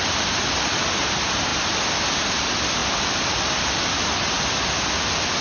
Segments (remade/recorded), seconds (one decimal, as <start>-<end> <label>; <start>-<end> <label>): 0.0-5.4 recorded